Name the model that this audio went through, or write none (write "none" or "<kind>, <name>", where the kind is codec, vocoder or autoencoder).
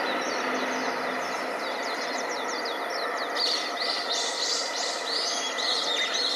none